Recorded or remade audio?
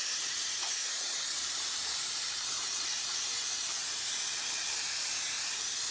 remade